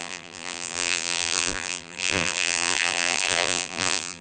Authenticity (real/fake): fake